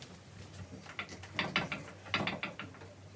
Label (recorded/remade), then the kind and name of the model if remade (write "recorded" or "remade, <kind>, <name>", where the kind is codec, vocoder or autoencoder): recorded